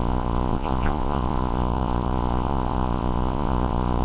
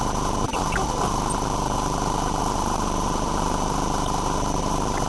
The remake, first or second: first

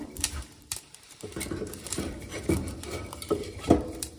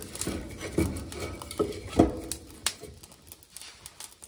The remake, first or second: first